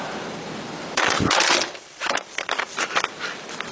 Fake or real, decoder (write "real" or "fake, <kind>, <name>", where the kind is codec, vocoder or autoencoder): fake, vocoder, BigVGAN v2